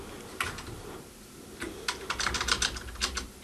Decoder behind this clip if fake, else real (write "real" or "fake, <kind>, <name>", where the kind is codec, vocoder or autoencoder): real